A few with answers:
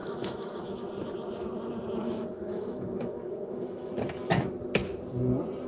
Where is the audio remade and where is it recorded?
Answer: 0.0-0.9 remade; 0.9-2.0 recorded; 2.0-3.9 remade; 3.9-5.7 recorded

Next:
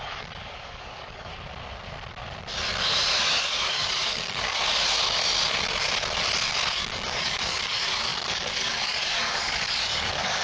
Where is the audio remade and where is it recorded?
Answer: 0.0-1.3 remade; 1.3-3.4 recorded; 3.4-4.6 remade; 4.6-6.7 recorded; 6.7-10.4 remade

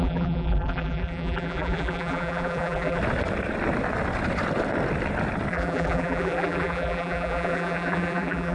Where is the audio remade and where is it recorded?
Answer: 0.0-3.0 remade; 3.0-5.5 recorded; 5.5-8.5 remade

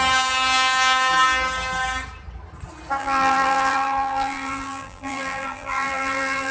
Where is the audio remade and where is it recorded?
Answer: 0.0-3.0 recorded; 3.0-6.5 remade

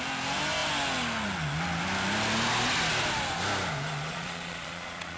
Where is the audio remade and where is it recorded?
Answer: 0.0-4.1 recorded; 4.1-5.2 remade

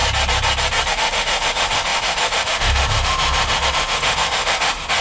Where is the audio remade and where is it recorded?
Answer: 0.0-0.9 recorded; 0.9-5.0 remade

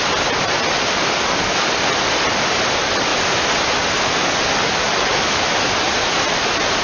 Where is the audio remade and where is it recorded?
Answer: 0.0-1.0 recorded; 1.0-1.7 remade; 1.7-4.6 recorded; 4.6-5.4 remade; 5.4-6.8 recorded

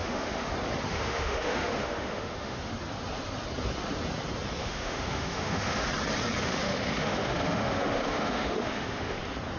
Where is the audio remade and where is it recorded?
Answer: 0.0-0.5 remade; 0.5-0.9 recorded; 0.9-2.7 remade; 2.7-4.6 recorded; 4.6-5.9 remade; 5.9-6.4 recorded; 6.4-9.2 remade; 9.2-9.6 recorded